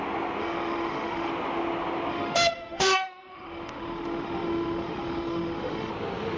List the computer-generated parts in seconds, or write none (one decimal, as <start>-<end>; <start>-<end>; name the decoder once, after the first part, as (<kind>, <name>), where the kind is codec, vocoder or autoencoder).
0.4-1.3 (autoencoder, DAC-VAE); 2.1-5.9